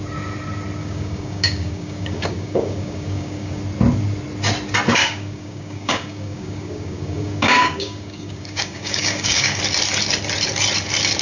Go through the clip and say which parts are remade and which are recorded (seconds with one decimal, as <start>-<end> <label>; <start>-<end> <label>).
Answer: 0.0-0.8 recorded; 0.8-3.6 remade; 3.6-5.0 recorded; 5.0-9.6 remade; 9.6-11.2 recorded

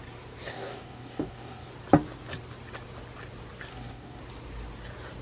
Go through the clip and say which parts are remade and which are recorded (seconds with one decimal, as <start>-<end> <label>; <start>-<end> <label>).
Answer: 0.0-0.5 recorded; 0.5-1.7 remade; 1.7-3.7 recorded; 3.7-4.2 remade; 4.2-5.2 recorded

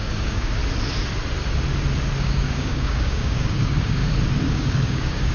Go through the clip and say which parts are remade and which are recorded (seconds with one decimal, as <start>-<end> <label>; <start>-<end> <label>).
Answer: 0.0-0.6 remade; 0.6-2.2 recorded; 2.2-4.0 remade; 4.0-4.5 recorded; 4.5-5.3 remade

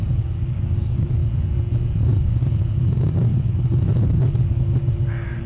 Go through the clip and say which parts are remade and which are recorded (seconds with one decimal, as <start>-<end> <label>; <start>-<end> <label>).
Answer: 0.0-1.2 remade; 1.2-2.2 recorded; 2.2-5.5 remade

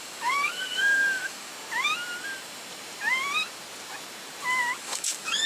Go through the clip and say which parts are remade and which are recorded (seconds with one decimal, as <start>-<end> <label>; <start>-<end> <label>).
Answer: 0.0-1.5 remade; 1.5-4.8 recorded; 4.8-5.5 remade

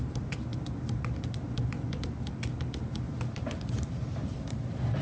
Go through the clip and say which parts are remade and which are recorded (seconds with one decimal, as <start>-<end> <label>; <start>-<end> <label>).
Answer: 0.0-5.0 recorded

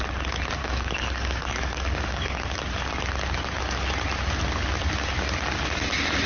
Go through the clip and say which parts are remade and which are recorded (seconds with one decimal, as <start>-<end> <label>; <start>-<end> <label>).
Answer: 0.0-0.6 recorded; 0.6-2.4 remade; 2.4-6.3 recorded

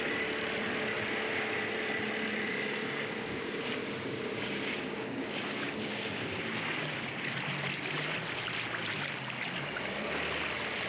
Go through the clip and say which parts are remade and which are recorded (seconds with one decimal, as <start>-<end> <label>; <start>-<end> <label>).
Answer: 0.0-2.5 recorded; 2.5-7.1 remade; 7.1-10.9 recorded